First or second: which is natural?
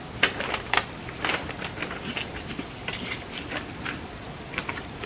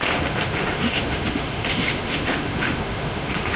first